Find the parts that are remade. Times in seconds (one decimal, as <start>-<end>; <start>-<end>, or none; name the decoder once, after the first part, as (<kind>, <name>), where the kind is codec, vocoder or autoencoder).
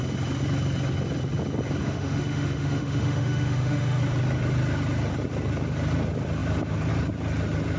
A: 1.8-4.0 (autoencoder, DAC-VAE)